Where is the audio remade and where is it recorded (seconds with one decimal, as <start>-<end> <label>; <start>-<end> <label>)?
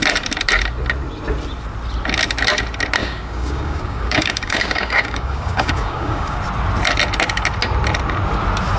0.0-3.0 recorded; 3.0-6.4 remade; 6.4-8.8 recorded